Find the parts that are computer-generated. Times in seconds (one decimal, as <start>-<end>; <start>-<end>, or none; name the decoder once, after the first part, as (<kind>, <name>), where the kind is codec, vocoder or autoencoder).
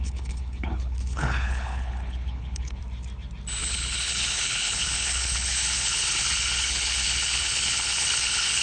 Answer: 0.0-2.8 (codec, HILCodec); 3.6-8.6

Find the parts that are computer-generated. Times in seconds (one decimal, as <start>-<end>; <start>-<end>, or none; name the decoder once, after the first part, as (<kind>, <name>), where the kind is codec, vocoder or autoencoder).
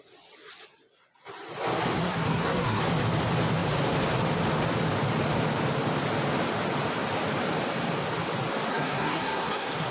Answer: 2.0-2.8 (codec, SNAC); 8.7-9.9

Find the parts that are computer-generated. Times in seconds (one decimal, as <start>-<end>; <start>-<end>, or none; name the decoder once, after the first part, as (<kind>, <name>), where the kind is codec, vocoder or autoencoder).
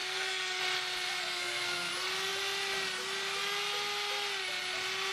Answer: 0.0-0.6 (codec, SNAC); 1.2-1.9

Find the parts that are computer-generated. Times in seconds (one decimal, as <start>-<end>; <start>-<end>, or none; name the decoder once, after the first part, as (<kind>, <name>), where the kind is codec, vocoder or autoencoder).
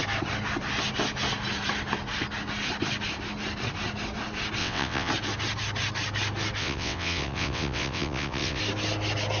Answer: 4.6-5.1 (vocoder, WaveNeXt); 6.6-8.6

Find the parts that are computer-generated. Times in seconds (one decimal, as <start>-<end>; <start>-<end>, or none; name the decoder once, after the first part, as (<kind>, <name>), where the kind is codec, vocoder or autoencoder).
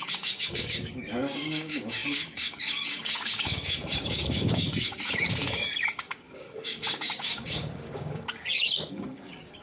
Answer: 0.0-9.6 (codec, DAC)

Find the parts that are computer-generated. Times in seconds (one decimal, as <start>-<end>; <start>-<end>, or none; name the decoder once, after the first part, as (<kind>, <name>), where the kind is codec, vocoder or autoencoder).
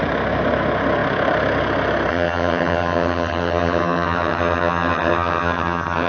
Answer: 2.1-6.1 (vocoder, HiFi-GAN)